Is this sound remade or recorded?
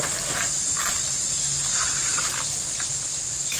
recorded